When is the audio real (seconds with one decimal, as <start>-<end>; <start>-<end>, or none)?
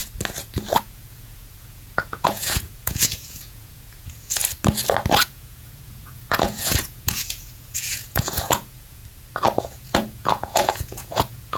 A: 0.0-0.8; 4.4-5.2; 9.0-9.6